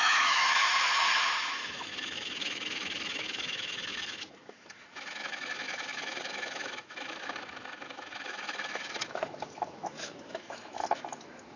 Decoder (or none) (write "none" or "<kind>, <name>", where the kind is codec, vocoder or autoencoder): autoencoder, DAC-VAE